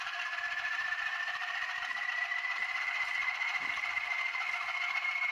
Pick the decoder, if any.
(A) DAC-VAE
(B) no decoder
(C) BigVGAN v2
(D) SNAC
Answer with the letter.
C